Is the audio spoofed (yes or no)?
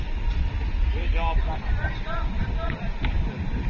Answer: no